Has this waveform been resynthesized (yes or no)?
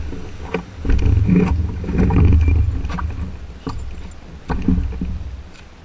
no